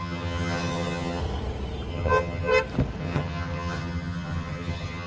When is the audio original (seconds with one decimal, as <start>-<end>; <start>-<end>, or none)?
1.2-1.9; 2.5-3.0